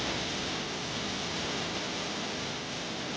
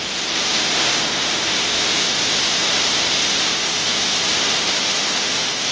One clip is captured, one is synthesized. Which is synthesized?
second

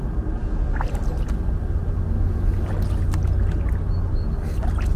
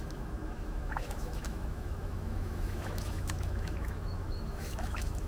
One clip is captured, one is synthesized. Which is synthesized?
second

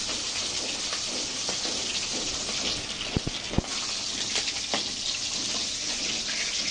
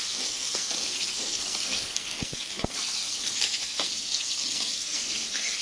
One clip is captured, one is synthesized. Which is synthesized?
second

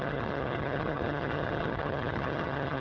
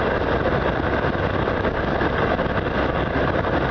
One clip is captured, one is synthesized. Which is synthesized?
first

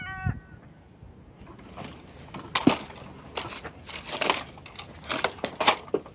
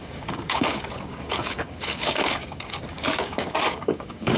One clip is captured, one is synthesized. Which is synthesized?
second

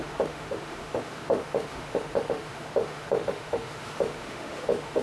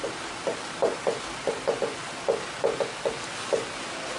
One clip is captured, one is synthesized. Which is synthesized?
first